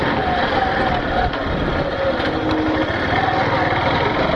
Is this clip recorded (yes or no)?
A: yes